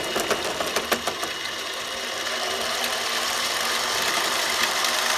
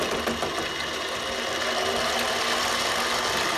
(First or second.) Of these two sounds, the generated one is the first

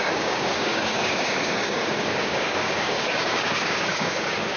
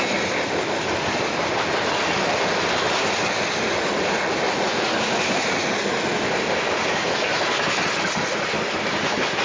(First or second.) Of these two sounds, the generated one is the first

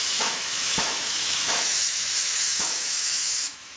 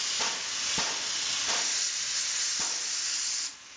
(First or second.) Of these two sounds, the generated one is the first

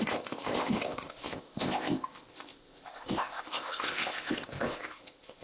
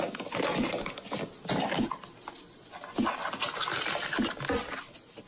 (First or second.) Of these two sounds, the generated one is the first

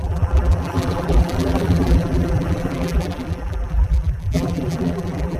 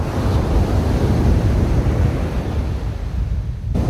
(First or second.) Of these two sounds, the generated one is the first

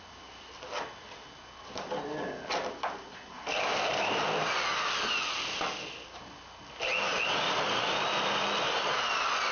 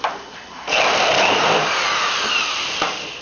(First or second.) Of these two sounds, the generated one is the second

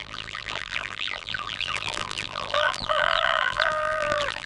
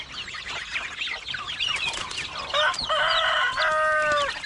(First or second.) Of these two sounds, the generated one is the first